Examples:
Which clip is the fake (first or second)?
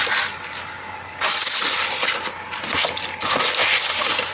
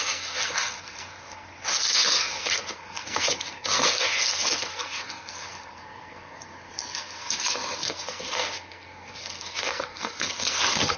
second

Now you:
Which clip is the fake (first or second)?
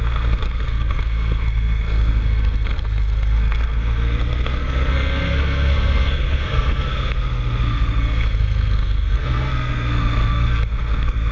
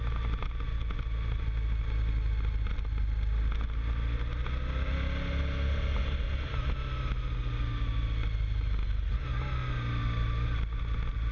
first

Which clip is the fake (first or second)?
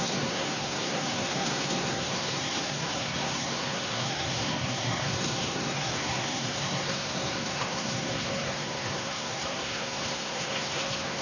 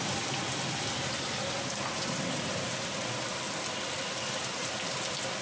first